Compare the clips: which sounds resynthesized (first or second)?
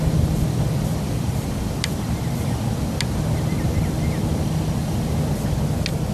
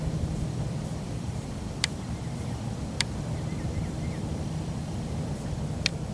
second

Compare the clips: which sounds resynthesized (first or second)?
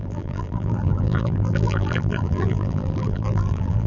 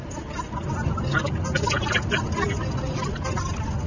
first